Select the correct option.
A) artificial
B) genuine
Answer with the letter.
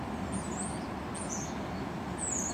B